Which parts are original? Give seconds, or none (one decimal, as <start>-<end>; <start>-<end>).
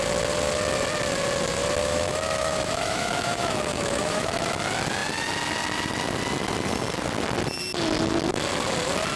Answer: 0.0-1.8; 4.5-9.2